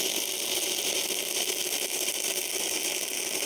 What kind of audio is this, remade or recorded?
recorded